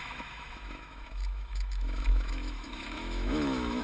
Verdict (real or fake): fake